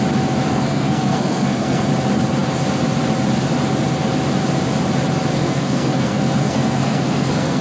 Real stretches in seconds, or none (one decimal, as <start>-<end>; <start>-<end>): 0.0-0.5; 1.9-5.3